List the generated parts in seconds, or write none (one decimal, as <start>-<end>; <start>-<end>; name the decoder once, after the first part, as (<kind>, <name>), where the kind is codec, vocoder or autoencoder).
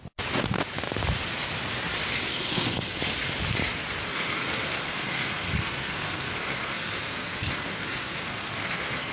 2.3-3.0 (codec, SNAC); 4.1-9.1